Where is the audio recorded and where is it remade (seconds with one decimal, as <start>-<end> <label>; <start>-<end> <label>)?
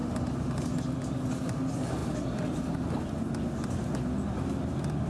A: 0.0-5.1 recorded